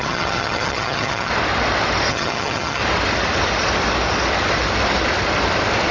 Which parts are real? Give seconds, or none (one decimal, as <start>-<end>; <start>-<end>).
1.3-2.1; 2.8-5.9